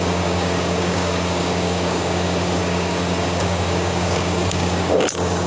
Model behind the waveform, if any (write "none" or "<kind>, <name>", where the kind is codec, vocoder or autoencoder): codec, DAC